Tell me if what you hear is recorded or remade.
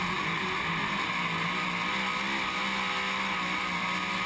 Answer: recorded